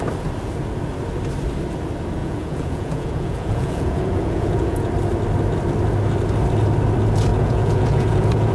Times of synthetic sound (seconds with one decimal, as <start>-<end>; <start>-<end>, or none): 2.2-4.9; 7.3-8.5